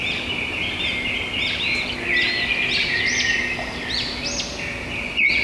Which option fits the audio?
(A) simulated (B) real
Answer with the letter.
B